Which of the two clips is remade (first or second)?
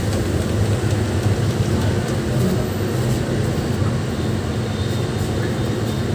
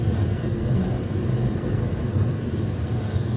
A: second